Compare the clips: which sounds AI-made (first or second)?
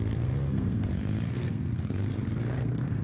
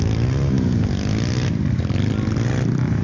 first